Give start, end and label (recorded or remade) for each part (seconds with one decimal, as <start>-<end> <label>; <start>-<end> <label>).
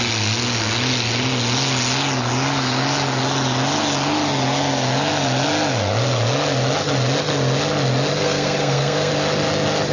0.0-8.1 recorded; 8.1-9.1 remade; 9.1-9.9 recorded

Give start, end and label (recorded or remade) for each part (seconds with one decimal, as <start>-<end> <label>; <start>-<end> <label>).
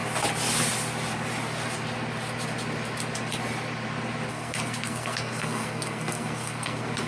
0.0-4.3 recorded; 4.3-7.1 remade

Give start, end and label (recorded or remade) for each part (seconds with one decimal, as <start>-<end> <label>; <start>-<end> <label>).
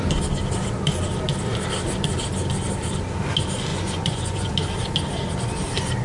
0.0-3.7 recorded; 3.7-4.5 remade; 4.5-6.0 recorded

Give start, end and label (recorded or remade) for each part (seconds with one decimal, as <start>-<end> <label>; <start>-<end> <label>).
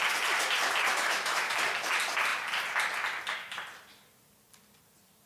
0.0-0.9 recorded; 0.9-1.5 remade; 1.5-5.3 recorded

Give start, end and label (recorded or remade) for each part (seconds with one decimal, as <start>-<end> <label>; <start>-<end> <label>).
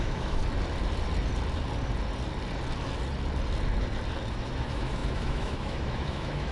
0.0-0.4 remade; 0.4-4.3 recorded; 4.3-6.5 remade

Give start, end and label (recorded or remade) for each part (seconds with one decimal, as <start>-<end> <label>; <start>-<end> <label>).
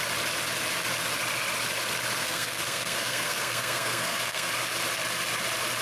0.0-2.2 recorded; 2.2-4.5 remade; 4.5-5.8 recorded